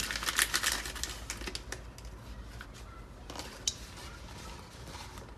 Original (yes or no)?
yes